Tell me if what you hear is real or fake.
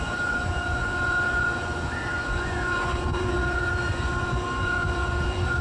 fake